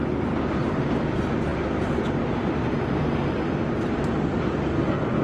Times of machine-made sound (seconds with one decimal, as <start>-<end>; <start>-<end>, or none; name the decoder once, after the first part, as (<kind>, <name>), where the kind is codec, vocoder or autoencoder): none